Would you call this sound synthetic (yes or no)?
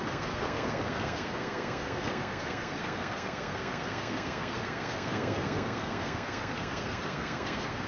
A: yes